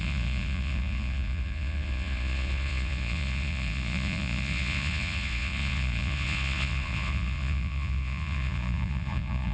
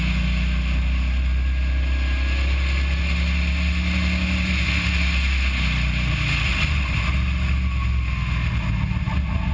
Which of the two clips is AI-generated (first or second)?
first